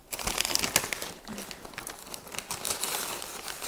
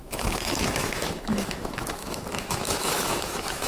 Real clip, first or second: first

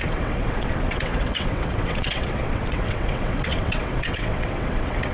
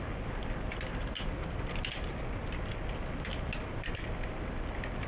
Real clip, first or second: second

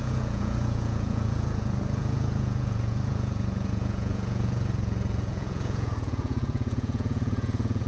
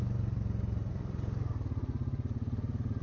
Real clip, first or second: second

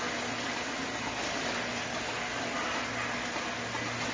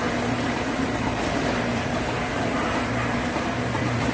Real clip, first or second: first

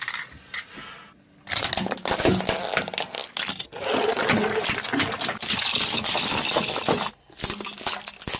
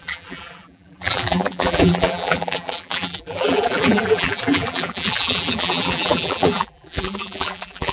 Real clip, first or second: first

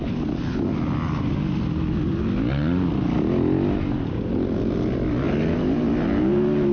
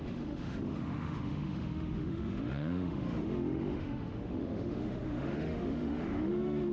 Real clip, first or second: first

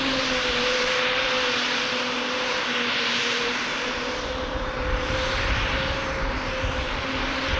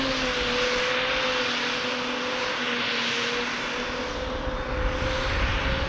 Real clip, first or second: second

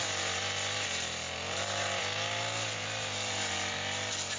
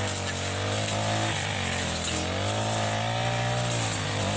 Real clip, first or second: second